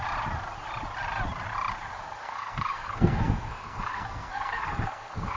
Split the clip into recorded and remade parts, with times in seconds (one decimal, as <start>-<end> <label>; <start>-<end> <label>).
0.0-2.2 recorded; 2.2-5.4 remade